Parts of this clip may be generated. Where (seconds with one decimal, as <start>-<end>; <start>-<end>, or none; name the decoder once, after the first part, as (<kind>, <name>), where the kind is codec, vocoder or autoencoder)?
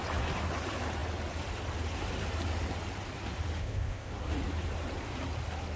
3.6-4.1 (codec, ZipCodec)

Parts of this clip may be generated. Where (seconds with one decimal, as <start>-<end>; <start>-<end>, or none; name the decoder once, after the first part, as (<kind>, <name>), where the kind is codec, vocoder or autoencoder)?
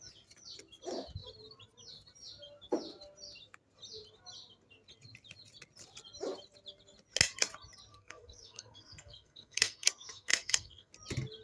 7.9-10.9 (codec, SNAC)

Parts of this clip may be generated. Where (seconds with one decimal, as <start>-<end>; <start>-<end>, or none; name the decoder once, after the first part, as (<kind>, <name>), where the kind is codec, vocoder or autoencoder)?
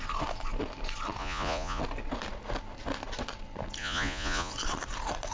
1.2-1.8 (vocoder, Vocos); 3.8-4.5